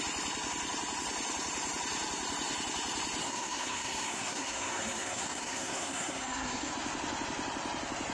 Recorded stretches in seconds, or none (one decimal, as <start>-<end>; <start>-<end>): 0.0-3.2; 6.7-8.1